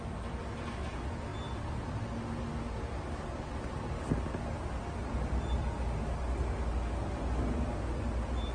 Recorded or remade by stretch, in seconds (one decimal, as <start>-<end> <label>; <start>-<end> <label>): 0.0-8.5 recorded